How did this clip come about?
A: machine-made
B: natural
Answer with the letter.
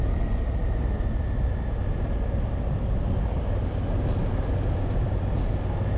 B